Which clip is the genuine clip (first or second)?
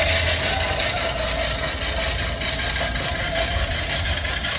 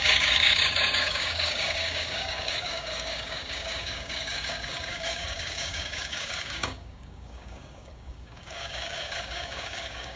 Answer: first